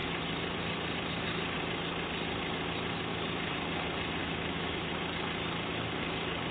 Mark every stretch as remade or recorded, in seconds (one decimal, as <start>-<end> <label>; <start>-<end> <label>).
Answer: 0.0-4.2 recorded; 4.2-4.9 remade; 4.9-6.5 recorded